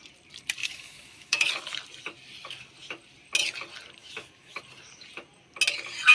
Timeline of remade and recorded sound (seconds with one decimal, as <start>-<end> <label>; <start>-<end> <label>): 0.0-0.6 recorded; 0.6-1.5 remade; 1.5-4.0 recorded; 4.0-4.6 remade; 4.6-6.1 recorded